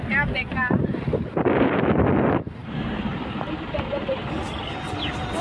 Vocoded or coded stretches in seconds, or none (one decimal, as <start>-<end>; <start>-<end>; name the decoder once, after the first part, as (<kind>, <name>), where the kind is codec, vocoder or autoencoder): 2.6-4.1 (vocoder, BigVGAN v2)